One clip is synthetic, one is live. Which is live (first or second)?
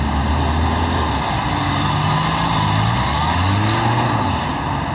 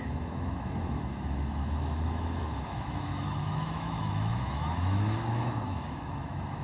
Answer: first